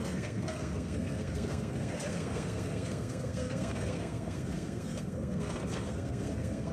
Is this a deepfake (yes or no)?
yes